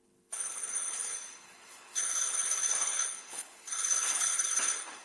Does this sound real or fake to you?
fake